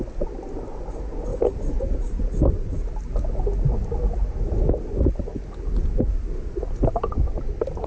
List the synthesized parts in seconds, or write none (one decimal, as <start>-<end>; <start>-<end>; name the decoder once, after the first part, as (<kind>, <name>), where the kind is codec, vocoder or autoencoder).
none